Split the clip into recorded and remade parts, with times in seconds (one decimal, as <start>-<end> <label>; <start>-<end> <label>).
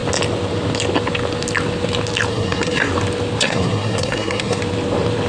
0.0-2.3 recorded; 2.3-2.9 remade; 2.9-3.4 recorded; 3.4-4.6 remade; 4.6-5.3 recorded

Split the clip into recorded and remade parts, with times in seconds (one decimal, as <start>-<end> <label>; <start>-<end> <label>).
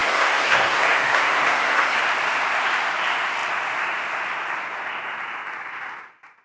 0.0-2.0 remade; 2.0-6.4 recorded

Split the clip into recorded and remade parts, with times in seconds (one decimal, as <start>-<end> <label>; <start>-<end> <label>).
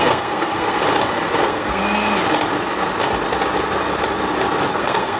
0.0-0.8 remade; 0.8-1.4 recorded; 1.4-1.8 remade; 1.8-4.7 recorded; 4.7-5.2 remade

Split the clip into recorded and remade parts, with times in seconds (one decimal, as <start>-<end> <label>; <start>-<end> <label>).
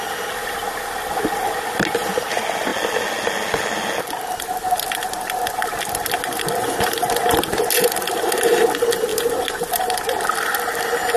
0.0-11.2 recorded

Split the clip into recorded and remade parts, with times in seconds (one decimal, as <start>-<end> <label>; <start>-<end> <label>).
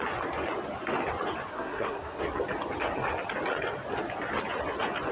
0.0-1.5 recorded; 1.5-2.2 remade; 2.2-5.1 recorded